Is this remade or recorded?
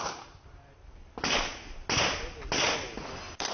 recorded